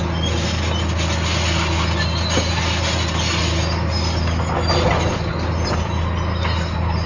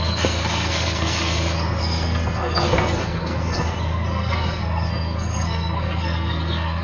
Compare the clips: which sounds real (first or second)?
first